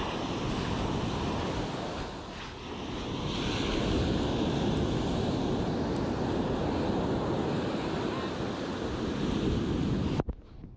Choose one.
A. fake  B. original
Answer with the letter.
B